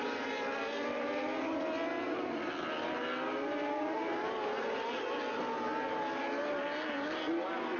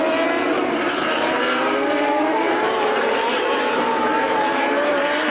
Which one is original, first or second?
first